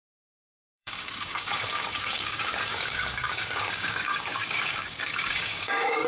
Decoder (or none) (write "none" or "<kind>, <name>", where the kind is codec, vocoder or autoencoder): codec, DAC